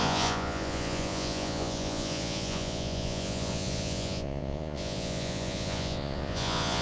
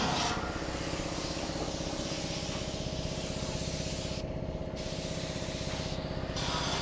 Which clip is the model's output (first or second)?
first